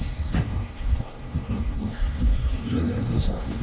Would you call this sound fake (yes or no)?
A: yes